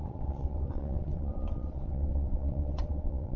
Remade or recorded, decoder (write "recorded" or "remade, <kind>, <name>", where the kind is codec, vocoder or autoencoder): remade, vocoder, WaveNeXt